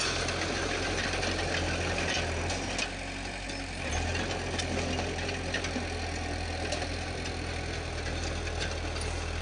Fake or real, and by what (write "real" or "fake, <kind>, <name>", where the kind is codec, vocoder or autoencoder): real